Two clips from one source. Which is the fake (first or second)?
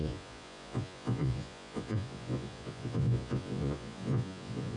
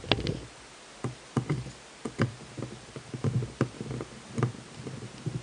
first